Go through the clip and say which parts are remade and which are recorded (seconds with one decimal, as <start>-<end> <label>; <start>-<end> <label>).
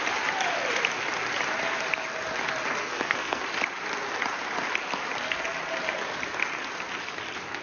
0.0-2.8 recorded; 2.8-3.4 remade; 3.4-7.6 recorded